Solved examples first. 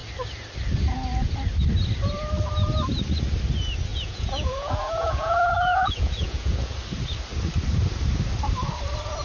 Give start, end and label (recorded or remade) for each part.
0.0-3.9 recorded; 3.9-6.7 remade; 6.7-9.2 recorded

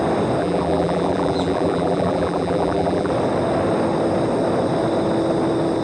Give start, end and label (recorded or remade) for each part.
0.0-0.4 recorded; 0.4-3.1 remade; 3.1-5.8 recorded

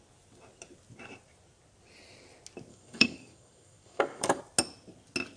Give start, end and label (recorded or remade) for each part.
0.0-2.7 recorded; 2.7-4.4 remade; 4.4-5.4 recorded